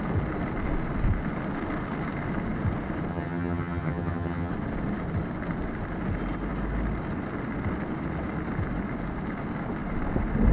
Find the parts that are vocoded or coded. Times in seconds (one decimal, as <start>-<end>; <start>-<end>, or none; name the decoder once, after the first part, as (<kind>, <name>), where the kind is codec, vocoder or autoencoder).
3.1-4.5 (vocoder, HiFi-GAN)